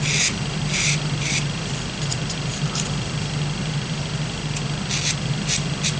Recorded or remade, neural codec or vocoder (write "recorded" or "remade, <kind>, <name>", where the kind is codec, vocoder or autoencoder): recorded